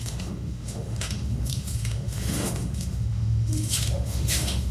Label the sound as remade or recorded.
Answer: remade